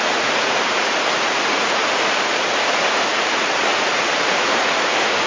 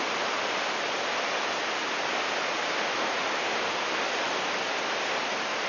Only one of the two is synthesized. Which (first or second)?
first